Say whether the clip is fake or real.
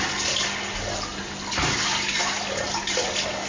real